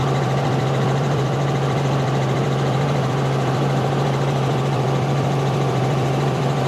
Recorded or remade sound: remade